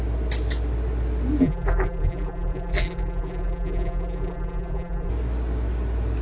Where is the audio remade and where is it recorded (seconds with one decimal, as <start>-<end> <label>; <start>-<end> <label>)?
0.0-1.4 recorded; 1.4-5.1 remade; 5.1-6.2 recorded